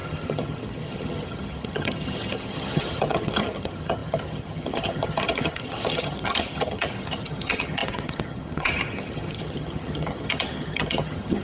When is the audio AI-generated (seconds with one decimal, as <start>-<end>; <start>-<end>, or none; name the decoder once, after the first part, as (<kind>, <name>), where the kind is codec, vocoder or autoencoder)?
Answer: 0.0-11.4 (vocoder, HiFi-GAN)

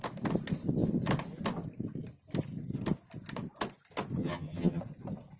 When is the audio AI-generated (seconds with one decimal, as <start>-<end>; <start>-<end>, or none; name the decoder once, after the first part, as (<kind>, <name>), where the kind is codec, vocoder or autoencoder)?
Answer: 4.2-4.8 (vocoder, HiFi-GAN)

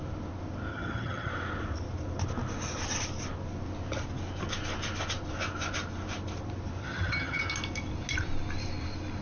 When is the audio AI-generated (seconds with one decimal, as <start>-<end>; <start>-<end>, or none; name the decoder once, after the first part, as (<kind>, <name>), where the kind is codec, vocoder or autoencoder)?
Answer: 0.7-1.3 (vocoder, HiFi-GAN); 6.8-7.4

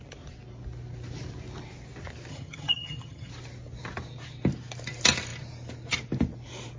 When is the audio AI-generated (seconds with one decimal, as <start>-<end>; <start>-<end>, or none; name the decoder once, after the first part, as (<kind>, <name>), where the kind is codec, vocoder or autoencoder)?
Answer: 2.3-3.3 (vocoder, HiFi-GAN)

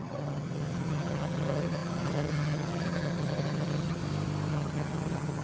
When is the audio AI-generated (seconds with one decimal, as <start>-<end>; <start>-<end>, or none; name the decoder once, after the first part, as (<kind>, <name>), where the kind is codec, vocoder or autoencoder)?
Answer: 0.0-4.0 (vocoder, HiFi-GAN); 4.5-5.4

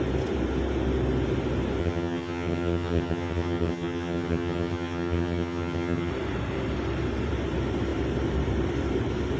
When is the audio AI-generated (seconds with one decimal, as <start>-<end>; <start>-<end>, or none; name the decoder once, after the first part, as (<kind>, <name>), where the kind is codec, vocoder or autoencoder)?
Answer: 1.8-6.1 (vocoder, HiFi-GAN)